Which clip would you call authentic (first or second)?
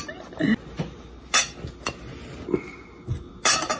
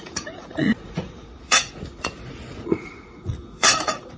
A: first